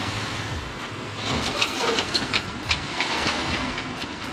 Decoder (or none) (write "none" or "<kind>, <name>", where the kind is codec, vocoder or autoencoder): codec, SNAC